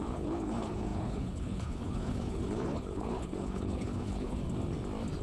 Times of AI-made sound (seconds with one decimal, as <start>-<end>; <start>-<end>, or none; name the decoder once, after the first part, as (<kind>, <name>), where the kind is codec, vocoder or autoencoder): 0.0-4.4 (codec, HILCodec)